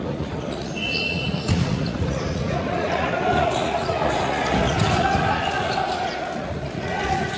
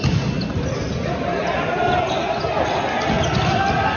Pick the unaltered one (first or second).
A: second